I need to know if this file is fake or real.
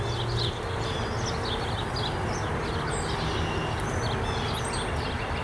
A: real